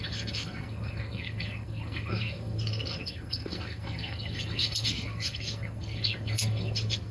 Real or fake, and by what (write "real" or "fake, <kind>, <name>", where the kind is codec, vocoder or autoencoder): fake, codec, SNAC